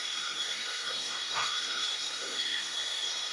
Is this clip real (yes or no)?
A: no